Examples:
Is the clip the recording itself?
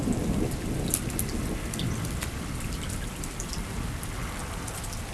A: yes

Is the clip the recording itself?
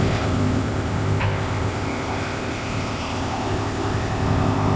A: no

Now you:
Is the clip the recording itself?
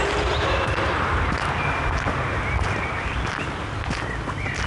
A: yes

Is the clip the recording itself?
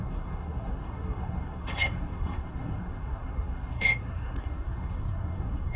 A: no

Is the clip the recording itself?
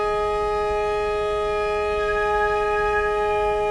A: yes